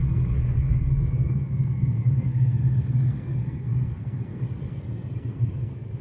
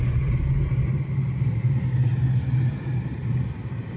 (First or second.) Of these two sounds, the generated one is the first